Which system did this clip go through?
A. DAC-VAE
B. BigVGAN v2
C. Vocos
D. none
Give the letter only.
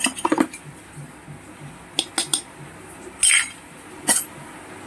D